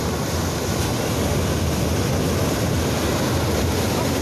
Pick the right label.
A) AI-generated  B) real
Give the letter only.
B